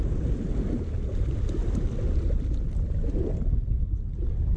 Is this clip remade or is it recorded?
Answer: recorded